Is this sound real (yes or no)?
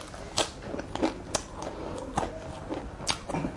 yes